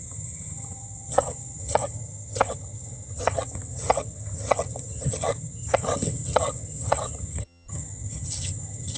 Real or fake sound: fake